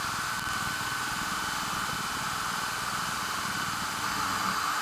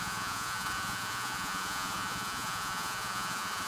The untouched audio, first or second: first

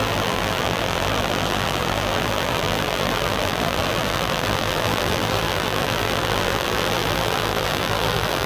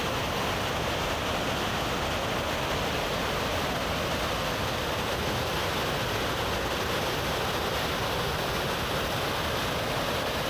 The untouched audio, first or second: second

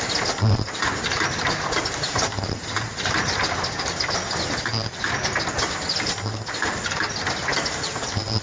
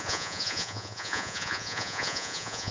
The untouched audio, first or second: first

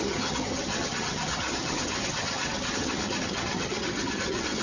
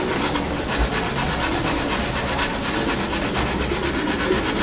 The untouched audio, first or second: second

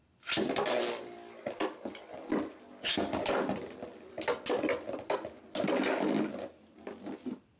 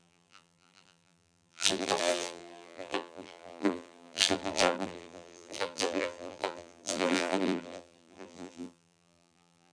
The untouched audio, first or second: first